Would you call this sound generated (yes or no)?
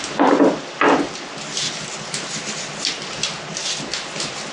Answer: no